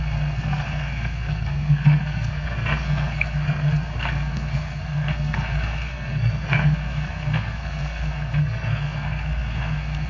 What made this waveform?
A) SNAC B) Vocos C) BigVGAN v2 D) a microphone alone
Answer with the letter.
A